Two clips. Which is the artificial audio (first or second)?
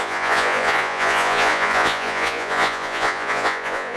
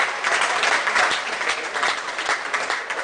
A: first